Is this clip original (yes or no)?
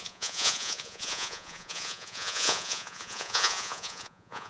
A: no